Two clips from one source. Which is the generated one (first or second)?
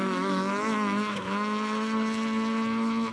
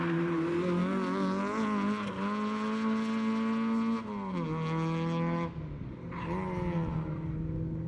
first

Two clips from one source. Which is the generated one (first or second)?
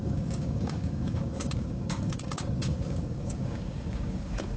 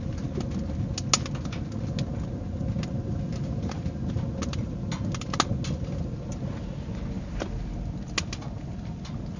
first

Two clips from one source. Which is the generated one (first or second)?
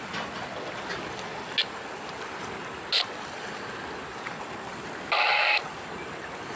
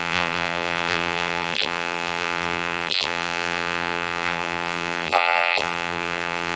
second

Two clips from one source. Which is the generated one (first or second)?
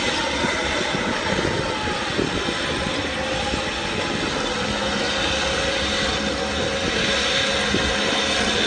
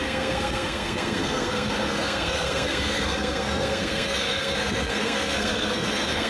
second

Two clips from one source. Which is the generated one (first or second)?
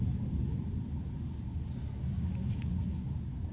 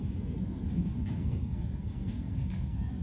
second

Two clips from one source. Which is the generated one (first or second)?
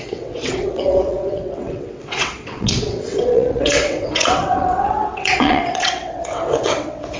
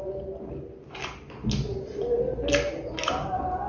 first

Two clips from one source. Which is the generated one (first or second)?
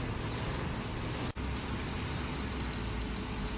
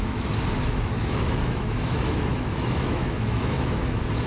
second